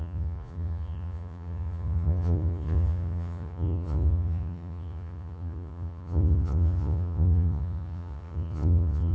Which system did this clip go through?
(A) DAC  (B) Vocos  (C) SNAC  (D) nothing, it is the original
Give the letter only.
B